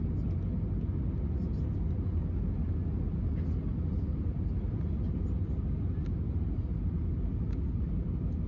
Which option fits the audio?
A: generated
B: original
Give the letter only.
B